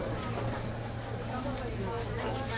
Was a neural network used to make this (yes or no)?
no